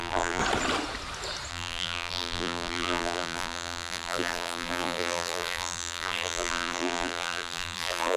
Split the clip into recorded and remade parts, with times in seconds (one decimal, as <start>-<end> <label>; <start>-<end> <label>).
0.0-0.4 remade; 0.4-1.5 recorded; 1.5-8.2 remade